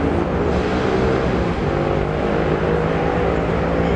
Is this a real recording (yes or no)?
yes